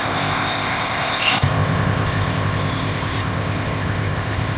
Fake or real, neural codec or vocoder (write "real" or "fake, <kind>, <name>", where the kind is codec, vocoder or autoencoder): fake, codec, ZipCodec